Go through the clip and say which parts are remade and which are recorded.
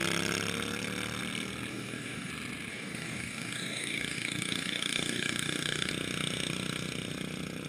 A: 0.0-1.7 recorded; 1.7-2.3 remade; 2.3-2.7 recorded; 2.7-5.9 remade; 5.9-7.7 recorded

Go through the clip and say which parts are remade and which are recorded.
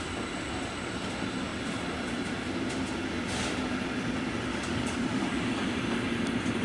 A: 0.0-4.5 recorded; 4.5-5.6 remade; 5.6-6.6 recorded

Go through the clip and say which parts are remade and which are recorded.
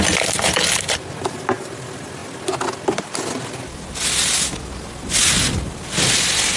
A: 0.0-6.6 recorded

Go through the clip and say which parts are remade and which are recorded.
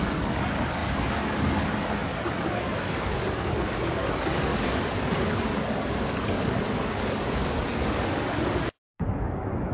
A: 0.0-9.7 remade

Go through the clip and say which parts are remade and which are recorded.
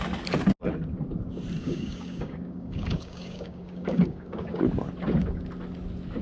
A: 0.0-1.6 recorded; 1.6-4.6 remade; 4.6-6.2 recorded